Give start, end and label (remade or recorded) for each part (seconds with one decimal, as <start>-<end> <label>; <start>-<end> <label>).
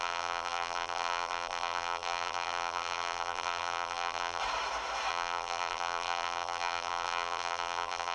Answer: 0.0-4.4 remade; 4.4-5.1 recorded; 5.1-8.1 remade